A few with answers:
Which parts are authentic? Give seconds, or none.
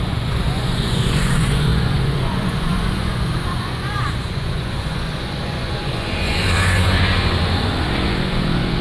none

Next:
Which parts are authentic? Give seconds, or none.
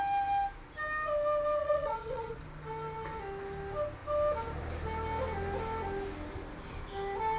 0.0-1.6; 2.4-7.4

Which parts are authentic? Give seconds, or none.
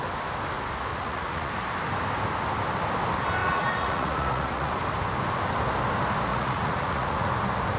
0.0-0.9; 1.5-3.4; 4.7-6.3; 7.3-7.8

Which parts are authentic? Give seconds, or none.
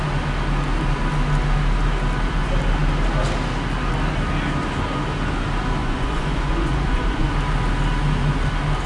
0.0-5.8; 7.3-8.9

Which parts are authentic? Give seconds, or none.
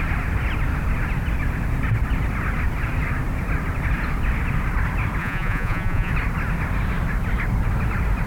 0.0-5.2; 6.1-8.3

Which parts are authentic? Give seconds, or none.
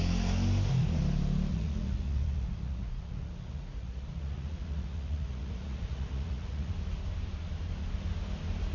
0.0-1.5; 6.7-8.7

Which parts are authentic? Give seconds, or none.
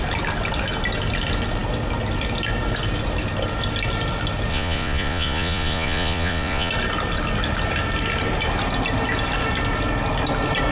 0.0-4.5; 6.7-10.7